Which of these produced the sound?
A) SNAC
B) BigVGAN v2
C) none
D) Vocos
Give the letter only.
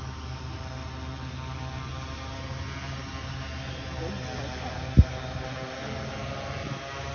C